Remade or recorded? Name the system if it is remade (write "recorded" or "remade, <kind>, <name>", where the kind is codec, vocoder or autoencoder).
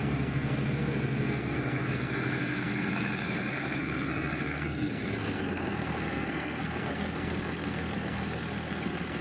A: remade, codec, SNAC